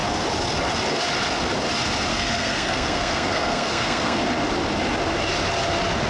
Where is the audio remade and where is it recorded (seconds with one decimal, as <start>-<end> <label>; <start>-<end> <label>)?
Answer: 0.0-2.1 recorded; 2.1-4.2 remade; 4.2-6.1 recorded